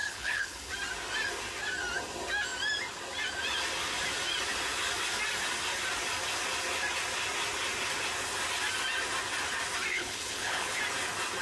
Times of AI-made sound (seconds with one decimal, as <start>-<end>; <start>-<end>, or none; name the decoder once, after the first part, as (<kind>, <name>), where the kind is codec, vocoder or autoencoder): 0.0-0.7 (codec, HILCodec); 9.9-10.8